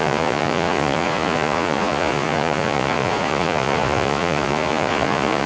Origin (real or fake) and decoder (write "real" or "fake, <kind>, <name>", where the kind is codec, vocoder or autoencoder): fake, vocoder, Vocos